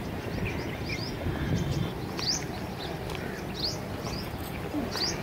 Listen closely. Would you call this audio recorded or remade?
recorded